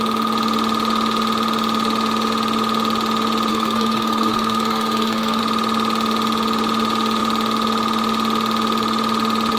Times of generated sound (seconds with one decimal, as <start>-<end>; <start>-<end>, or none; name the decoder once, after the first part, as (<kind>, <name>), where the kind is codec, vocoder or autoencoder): 3.5-5.4 (codec, SNAC)